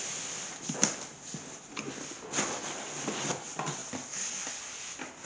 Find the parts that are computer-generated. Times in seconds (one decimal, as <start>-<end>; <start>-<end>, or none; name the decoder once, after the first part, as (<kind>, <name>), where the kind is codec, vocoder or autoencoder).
none